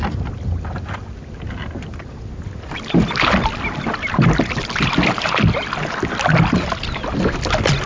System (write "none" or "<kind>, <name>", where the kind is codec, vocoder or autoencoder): none